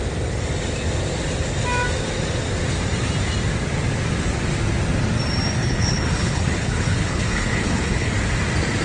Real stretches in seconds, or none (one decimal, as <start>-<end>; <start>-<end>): 0.0-5.6; 8.1-8.8